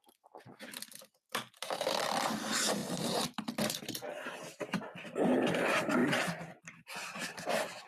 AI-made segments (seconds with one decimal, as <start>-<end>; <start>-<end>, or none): 6.0-6.6